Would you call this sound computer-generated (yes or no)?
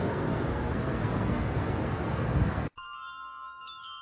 yes